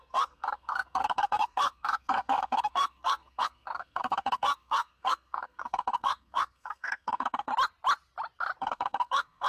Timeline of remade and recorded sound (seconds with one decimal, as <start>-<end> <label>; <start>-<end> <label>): 0.0-7.5 remade; 7.5-8.6 recorded; 8.6-9.5 remade